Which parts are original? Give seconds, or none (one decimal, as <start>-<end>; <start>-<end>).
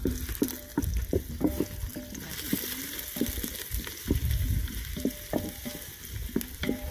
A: 0.0-0.7; 1.3-1.9; 4.9-5.6